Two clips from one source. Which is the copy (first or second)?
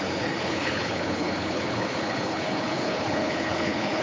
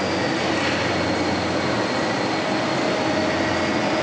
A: first